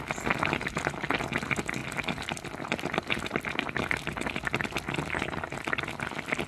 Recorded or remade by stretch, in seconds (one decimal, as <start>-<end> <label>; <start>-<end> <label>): 0.0-6.5 recorded